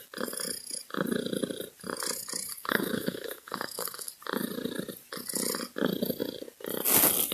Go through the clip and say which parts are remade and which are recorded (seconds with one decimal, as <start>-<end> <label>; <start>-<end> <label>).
0.0-2.5 recorded; 2.5-4.1 remade; 4.1-7.3 recorded